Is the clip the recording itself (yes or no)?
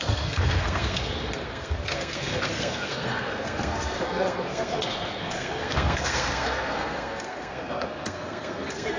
no